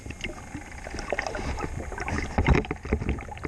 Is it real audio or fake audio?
real